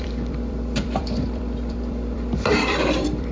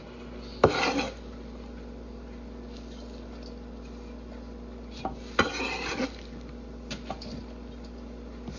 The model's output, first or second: first